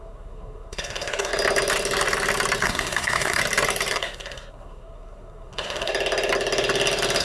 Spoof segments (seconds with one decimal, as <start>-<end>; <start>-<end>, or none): 0.0-1.3; 2.6-3.4; 3.9-5.9